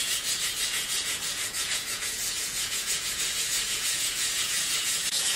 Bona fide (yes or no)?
no